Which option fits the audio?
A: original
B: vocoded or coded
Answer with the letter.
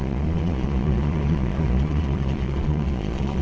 B